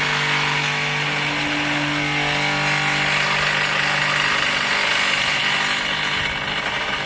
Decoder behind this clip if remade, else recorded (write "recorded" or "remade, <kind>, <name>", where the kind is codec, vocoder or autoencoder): recorded